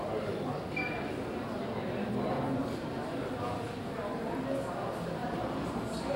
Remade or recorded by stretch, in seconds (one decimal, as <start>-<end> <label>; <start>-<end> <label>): 0.0-6.2 recorded

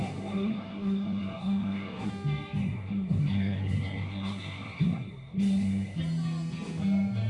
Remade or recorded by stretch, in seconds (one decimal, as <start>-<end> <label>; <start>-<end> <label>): 0.0-2.1 remade; 2.1-2.6 recorded; 2.6-6.0 remade; 6.0-7.3 recorded

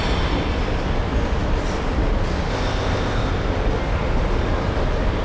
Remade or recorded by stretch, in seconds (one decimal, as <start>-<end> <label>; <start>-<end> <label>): 0.0-2.5 recorded; 2.5-3.3 remade; 3.3-5.2 recorded

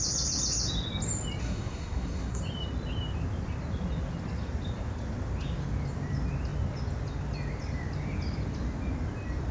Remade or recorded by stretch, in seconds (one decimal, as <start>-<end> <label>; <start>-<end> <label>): 0.0-1.4 recorded; 1.4-2.4 remade; 2.4-9.5 recorded

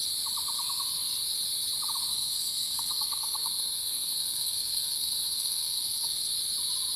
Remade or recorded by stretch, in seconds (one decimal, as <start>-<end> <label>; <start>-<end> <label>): 0.0-2.1 recorded; 2.1-6.3 remade; 6.3-7.0 recorded

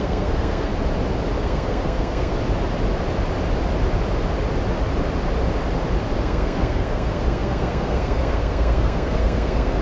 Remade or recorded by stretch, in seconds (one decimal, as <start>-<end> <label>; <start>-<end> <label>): 0.0-0.7 remade; 0.7-1.4 recorded; 1.4-2.3 remade; 2.3-6.2 recorded; 6.2-9.8 remade